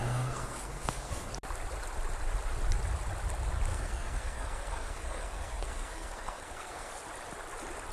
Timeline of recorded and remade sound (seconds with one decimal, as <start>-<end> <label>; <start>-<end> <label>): 0.0-1.3 remade; 1.3-3.7 recorded; 3.7-6.9 remade; 6.9-7.9 recorded